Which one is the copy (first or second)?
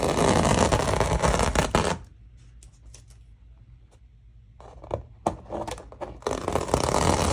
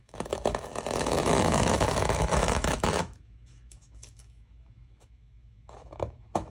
second